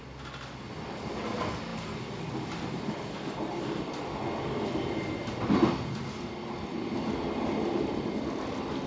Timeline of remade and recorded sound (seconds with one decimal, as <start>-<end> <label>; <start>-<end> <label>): 0.0-8.9 recorded